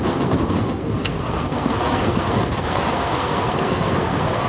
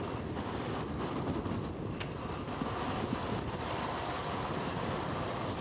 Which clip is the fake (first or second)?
first